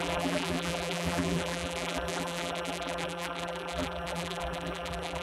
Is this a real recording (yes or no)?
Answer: no